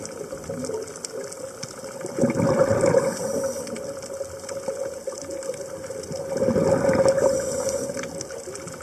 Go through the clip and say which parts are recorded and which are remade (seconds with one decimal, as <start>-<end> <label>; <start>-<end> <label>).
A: 0.0-8.8 recorded